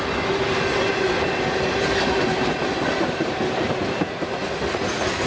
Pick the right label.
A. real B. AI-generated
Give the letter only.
A